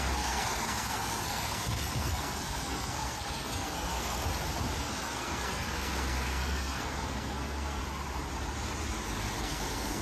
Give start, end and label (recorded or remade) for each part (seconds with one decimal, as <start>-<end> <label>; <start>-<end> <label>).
0.0-4.2 remade; 4.2-4.8 recorded; 4.8-7.8 remade; 7.8-9.4 recorded; 9.4-10.0 remade